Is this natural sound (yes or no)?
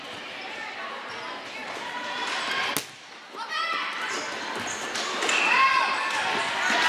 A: yes